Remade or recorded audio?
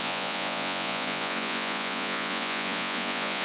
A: remade